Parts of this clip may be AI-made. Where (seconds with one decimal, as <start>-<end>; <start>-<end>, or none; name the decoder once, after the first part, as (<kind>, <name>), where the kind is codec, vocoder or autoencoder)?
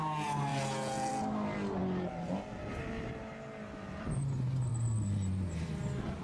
none